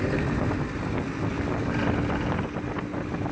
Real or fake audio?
real